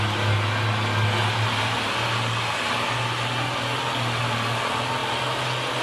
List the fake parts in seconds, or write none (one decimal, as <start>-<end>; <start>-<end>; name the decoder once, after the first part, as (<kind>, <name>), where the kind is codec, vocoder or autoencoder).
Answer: none